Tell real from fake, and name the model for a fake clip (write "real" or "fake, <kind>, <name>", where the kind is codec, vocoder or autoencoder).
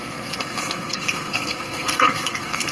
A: fake, codec, SNAC